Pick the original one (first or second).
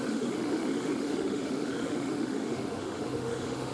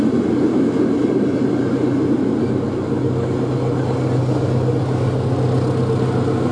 second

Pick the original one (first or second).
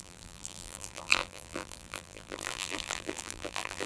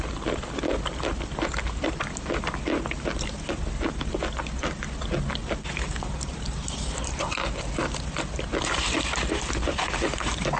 second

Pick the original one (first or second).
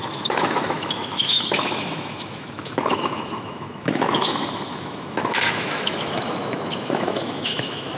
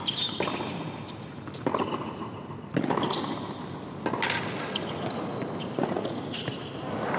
second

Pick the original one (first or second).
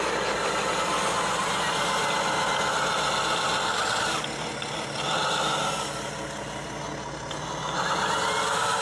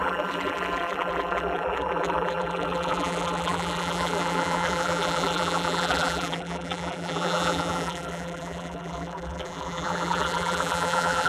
first